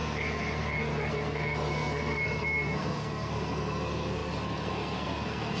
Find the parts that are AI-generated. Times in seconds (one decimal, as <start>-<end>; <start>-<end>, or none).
0.0-5.6